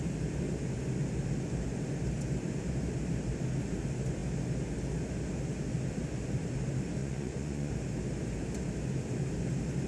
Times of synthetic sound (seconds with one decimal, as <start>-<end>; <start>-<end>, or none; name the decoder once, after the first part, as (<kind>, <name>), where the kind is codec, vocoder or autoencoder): 7.0-7.7 (vocoder, Vocos)